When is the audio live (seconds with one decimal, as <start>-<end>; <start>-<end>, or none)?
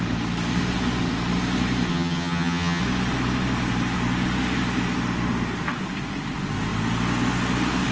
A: 0.0-1.9; 2.8-7.9